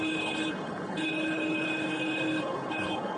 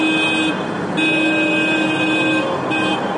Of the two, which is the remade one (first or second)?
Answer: first